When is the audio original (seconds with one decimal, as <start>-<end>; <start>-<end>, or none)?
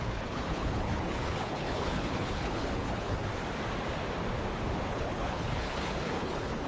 3.3-4.9